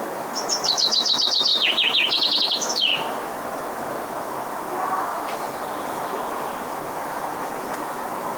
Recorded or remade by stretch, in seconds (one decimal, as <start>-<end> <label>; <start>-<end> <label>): 0.0-8.4 remade